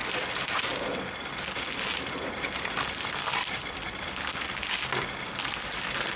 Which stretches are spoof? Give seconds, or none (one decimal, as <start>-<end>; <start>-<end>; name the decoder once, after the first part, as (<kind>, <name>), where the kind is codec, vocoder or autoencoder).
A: none